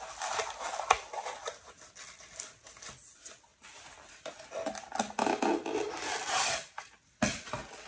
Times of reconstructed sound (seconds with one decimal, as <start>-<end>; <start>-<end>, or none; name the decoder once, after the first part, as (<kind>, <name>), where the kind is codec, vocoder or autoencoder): none